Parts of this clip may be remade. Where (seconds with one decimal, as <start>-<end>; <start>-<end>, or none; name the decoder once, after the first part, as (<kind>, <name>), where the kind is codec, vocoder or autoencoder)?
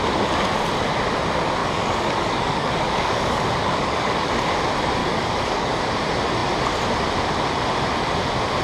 1.6-4.3 (codec, DAC); 5.0-5.8